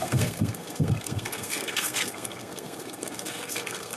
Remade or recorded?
remade